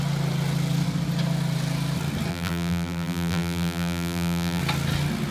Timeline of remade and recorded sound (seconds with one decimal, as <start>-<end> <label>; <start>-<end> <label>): 0.0-2.3 recorded; 2.3-4.6 remade; 4.6-5.3 recorded

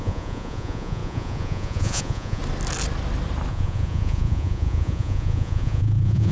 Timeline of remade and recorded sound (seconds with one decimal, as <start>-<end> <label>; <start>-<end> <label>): 0.0-2.4 remade; 2.4-3.5 recorded; 3.5-6.3 remade

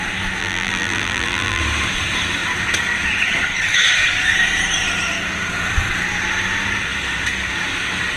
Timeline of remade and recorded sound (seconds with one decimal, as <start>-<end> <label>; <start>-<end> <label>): 0.0-0.4 recorded; 0.4-1.6 remade; 1.6-8.2 recorded

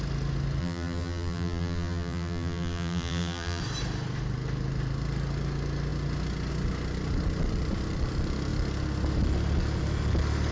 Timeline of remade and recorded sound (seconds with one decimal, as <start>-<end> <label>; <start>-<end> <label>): 0.0-0.6 recorded; 0.6-3.6 remade; 3.6-10.5 recorded

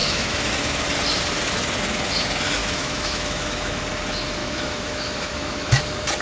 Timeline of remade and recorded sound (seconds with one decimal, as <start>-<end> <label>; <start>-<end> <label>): 0.0-0.5 remade; 0.5-2.6 recorded; 2.6-3.8 remade; 3.8-4.4 recorded; 4.4-5.8 remade; 5.8-6.2 recorded

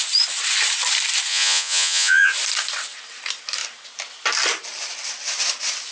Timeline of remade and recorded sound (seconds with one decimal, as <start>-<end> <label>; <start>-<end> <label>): 0.0-1.3 recorded; 1.3-2.3 remade; 2.3-5.9 recorded

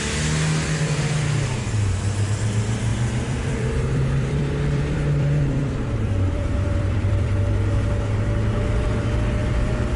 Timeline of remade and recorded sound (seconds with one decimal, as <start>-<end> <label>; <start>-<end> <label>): 0.0-2.9 recorded; 2.9-7.9 remade; 7.9-10.0 recorded